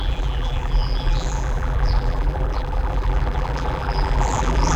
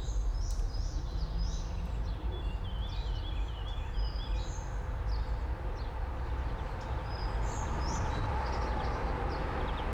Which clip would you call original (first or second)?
second